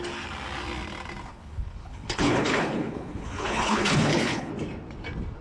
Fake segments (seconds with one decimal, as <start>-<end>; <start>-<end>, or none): 1.3-4.5

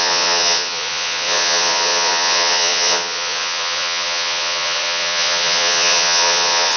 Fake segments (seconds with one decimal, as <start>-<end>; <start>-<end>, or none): 0.0-6.8

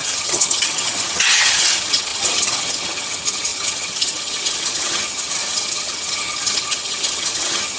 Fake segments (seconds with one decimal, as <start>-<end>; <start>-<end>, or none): 0.0-7.8